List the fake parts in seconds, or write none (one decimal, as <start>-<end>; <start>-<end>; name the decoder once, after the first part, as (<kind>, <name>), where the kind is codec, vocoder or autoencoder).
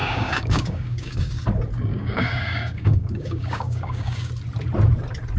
0.0-1.4 (codec, DAC); 1.9-4.3